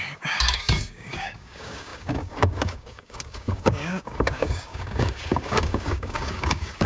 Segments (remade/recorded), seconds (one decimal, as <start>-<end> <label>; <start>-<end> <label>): 0.0-6.9 remade